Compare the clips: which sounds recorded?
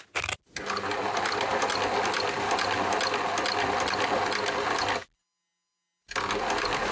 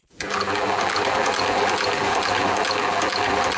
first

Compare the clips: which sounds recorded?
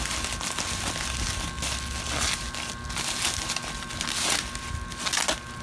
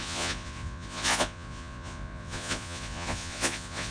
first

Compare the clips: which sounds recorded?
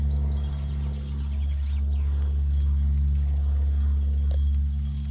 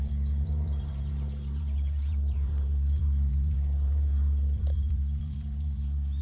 first